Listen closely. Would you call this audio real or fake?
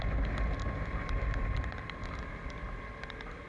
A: real